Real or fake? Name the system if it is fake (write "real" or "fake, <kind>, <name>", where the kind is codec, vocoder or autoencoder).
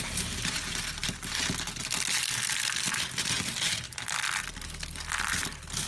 real